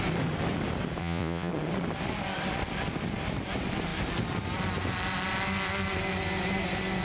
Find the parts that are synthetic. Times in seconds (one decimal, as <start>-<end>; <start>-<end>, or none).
1.0-1.5